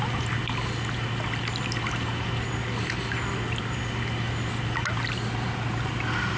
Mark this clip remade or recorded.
recorded